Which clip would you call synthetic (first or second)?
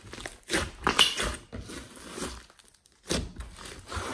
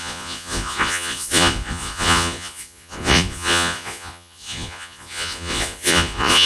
second